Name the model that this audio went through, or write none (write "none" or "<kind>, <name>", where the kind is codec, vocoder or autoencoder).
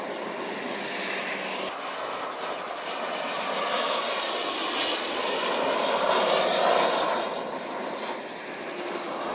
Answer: none